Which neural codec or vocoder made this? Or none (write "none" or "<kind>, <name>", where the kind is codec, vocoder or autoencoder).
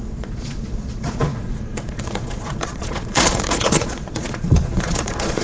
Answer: vocoder, Vocos